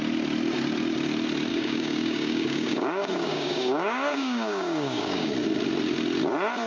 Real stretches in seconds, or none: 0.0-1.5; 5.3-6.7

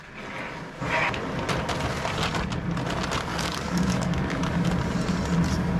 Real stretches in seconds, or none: 0.0-3.3; 4.7-5.8

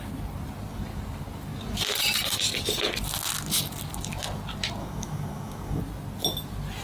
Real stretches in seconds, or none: 0.0-4.8; 5.8-6.8

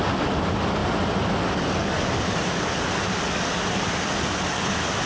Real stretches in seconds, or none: 0.0-5.1